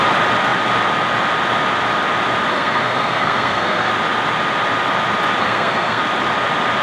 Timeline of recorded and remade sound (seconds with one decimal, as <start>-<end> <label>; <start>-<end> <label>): 0.0-2.5 recorded; 2.5-3.9 remade; 3.9-5.4 recorded; 5.4-6.0 remade; 6.0-6.8 recorded